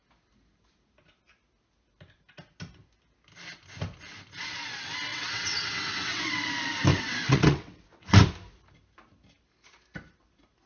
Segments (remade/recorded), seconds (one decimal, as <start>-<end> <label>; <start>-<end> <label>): 0.0-5.1 recorded; 5.1-6.4 remade; 6.4-6.9 recorded; 6.9-8.2 remade; 8.2-10.7 recorded